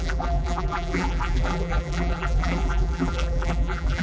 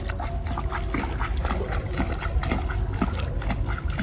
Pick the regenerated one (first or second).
first